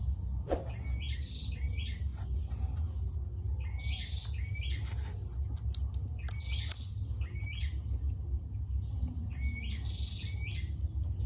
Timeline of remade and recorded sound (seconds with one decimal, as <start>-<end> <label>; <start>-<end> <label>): 0.0-11.3 recorded